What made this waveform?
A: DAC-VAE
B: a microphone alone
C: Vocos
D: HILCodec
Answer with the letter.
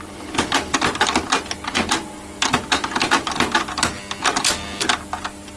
B